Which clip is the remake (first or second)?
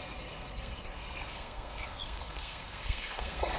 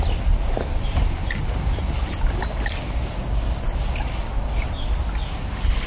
first